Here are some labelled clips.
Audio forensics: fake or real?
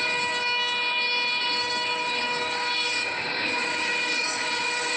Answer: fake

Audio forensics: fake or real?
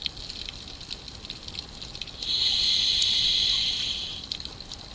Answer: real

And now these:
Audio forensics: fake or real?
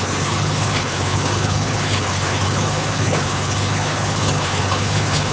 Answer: fake